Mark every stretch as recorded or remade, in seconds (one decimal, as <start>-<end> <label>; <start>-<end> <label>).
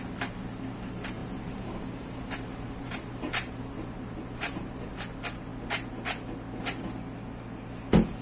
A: 0.0-1.2 recorded; 1.2-4.9 remade; 4.9-8.2 recorded